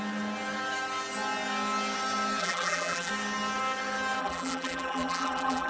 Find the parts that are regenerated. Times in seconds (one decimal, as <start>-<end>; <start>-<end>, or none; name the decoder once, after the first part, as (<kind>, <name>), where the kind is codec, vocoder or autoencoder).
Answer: 2.4-3.1 (vocoder, BigVGAN v2); 4.2-5.7